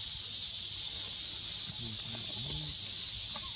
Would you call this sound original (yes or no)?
yes